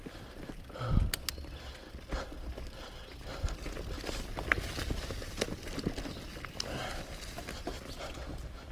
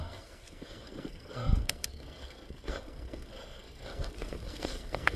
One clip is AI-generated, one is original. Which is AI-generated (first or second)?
second